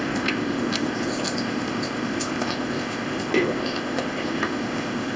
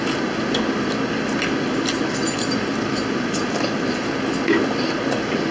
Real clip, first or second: second